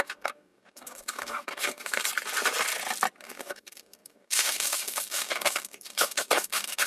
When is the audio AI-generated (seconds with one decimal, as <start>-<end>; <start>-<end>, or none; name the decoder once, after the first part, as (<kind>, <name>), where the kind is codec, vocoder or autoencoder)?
0.0-2.0 (codec, DAC); 3.2-6.9